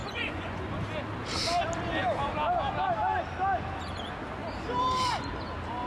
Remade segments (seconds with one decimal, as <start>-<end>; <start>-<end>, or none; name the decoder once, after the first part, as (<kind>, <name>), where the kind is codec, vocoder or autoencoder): 0.0-0.6 (vocoder, Vocos)